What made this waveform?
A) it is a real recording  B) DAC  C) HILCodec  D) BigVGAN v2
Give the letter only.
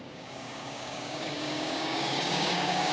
B